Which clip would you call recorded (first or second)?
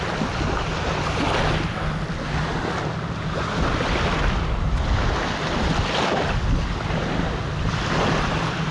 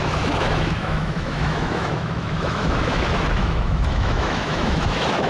first